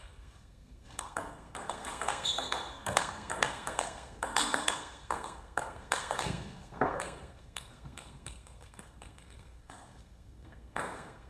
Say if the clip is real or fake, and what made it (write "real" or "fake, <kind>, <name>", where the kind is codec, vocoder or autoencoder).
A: fake, codec, SNAC